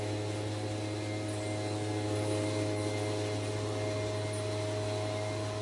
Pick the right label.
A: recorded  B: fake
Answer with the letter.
A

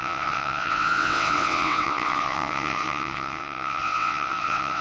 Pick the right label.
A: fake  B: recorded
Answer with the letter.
A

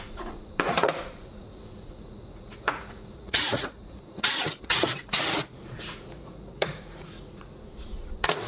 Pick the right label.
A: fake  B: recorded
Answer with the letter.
A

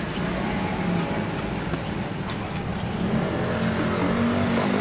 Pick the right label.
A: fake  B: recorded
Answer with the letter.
B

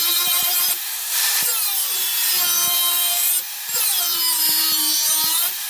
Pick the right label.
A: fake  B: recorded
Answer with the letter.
A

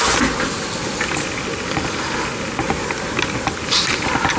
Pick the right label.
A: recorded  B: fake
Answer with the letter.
A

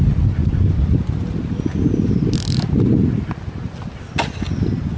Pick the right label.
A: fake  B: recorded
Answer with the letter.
B